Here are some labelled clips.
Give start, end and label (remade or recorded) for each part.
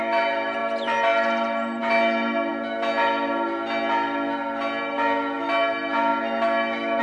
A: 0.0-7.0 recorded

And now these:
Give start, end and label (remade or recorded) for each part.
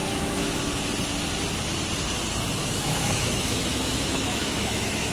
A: 0.0-0.6 remade; 0.6-2.6 recorded; 2.6-5.1 remade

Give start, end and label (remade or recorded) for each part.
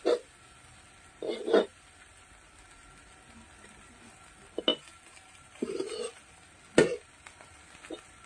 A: 0.0-8.3 recorded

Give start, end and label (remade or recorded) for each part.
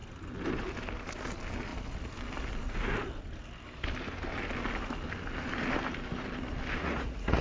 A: 0.0-6.8 recorded; 6.8-7.4 remade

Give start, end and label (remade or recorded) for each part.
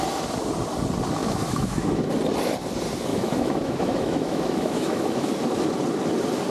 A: 0.0-1.2 recorded; 1.2-2.1 remade; 2.1-3.1 recorded; 3.1-5.3 remade; 5.3-6.5 recorded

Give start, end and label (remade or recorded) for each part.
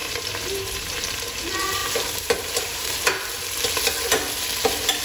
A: 0.0-1.3 remade; 1.3-1.8 recorded; 1.8-3.0 remade; 3.0-5.0 recorded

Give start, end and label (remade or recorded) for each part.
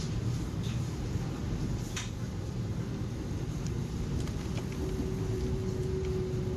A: 0.0-6.6 recorded